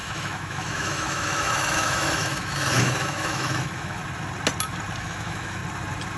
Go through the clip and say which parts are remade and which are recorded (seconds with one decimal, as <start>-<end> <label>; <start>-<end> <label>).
0.0-4.0 remade; 4.0-5.0 recorded; 5.0-5.6 remade; 5.6-6.2 recorded